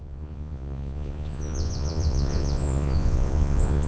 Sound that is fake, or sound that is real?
fake